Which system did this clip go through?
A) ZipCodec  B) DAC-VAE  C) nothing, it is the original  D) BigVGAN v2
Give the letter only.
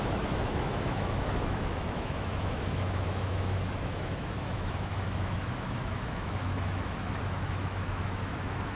B